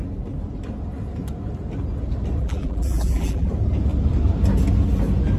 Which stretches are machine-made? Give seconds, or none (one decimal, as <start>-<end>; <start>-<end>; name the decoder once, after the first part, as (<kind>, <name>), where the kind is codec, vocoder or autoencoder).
2.4-3.5 (vocoder, BigVGAN v2)

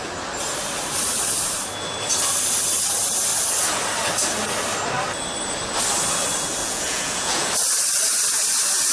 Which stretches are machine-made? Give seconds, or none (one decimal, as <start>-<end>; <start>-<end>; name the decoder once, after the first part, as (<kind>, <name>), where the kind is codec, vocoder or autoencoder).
6.6-7.5 (vocoder, Vocos)